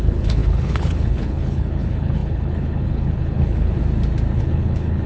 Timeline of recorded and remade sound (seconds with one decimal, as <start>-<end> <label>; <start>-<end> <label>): 0.0-3.8 remade; 3.8-4.4 recorded; 4.4-5.1 remade